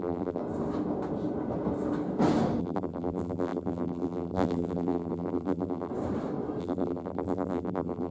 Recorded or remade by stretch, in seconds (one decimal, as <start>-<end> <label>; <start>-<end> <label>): 0.0-0.4 remade; 0.4-2.6 recorded; 2.6-5.9 remade; 5.9-6.6 recorded; 6.6-8.1 remade